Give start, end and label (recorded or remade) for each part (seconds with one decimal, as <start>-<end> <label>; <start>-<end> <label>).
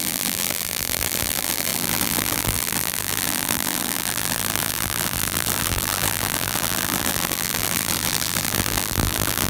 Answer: 0.0-9.5 remade